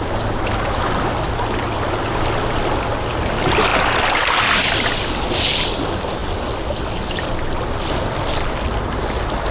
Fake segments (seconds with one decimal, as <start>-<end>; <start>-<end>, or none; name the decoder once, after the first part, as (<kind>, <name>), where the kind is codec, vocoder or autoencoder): none